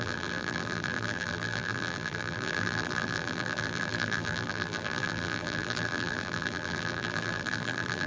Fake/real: fake